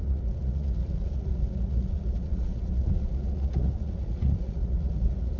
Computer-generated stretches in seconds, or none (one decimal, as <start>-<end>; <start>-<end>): 0.0-5.4

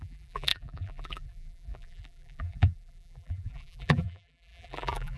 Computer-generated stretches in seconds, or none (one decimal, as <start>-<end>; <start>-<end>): 0.0-5.2

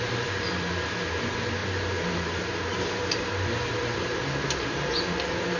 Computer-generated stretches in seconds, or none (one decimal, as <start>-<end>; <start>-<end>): 0.0-5.6

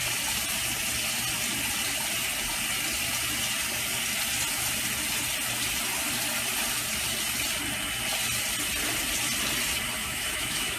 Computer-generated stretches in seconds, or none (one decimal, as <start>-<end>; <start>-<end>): 10.0-10.8

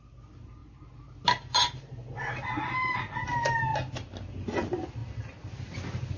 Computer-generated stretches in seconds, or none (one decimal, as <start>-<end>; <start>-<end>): none

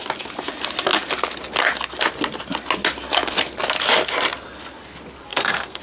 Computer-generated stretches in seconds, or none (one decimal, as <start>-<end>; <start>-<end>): 5.3-5.8

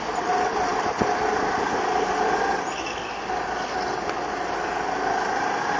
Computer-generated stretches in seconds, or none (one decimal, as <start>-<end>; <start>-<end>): none

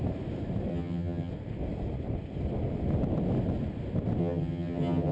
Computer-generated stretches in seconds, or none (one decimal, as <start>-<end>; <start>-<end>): 0.7-1.3; 4.2-5.1